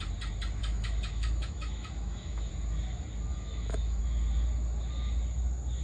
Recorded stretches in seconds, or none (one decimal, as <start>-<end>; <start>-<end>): 0.0-0.6; 2.5-3.3; 4.0-5.8